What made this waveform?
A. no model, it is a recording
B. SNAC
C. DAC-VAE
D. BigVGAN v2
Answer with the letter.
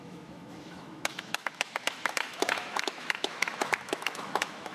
C